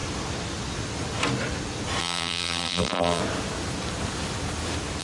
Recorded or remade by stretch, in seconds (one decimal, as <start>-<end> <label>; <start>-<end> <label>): 0.0-2.0 recorded; 2.0-3.2 remade; 3.2-5.0 recorded

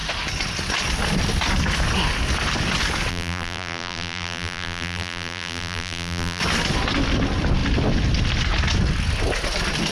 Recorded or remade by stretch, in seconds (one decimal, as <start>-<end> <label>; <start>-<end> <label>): 0.0-3.1 recorded; 3.1-6.4 remade; 6.4-9.9 recorded

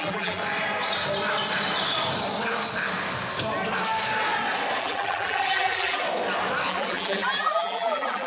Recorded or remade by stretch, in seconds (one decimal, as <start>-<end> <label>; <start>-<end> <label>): 0.0-0.4 remade; 0.4-4.8 recorded; 4.8-6.0 remade; 6.0-6.7 recorded; 6.7-8.3 remade

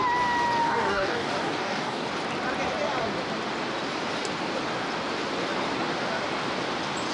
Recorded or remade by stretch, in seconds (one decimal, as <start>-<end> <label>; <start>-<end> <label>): 0.0-0.6 recorded; 0.6-2.1 remade; 2.1-7.1 recorded

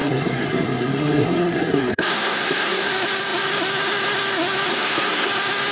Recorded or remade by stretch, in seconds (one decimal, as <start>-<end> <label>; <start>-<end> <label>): 0.0-2.9 remade; 2.9-4.7 recorded; 4.7-5.3 remade; 5.3-5.7 recorded

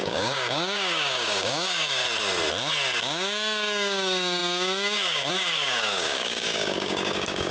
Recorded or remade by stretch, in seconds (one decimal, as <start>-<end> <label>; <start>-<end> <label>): 0.0-2.0 remade; 2.0-3.0 recorded; 3.0-7.5 remade